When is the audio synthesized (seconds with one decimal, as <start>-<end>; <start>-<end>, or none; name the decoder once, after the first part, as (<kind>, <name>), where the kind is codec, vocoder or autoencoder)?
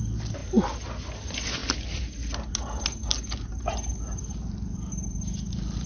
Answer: none